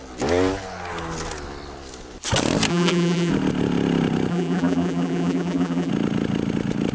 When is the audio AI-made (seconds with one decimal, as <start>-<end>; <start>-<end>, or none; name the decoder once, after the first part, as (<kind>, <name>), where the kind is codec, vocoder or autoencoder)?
2.7-3.3 (vocoder, BigVGAN v2); 4.3-5.9